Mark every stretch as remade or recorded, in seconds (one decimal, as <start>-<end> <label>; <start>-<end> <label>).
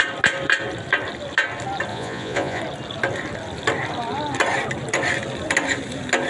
0.0-1.9 recorded; 1.9-2.6 remade; 2.6-6.3 recorded